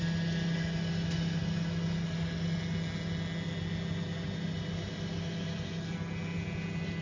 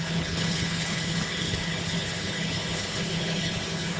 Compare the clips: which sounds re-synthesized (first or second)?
second